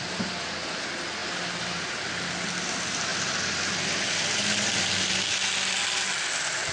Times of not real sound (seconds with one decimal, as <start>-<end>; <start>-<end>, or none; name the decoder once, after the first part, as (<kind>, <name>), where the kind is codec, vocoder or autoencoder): none